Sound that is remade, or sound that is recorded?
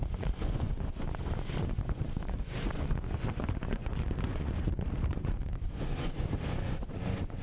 remade